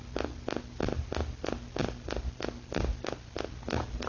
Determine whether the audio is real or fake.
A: real